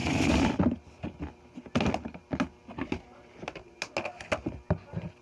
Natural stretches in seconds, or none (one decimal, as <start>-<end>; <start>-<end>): 0.0-5.2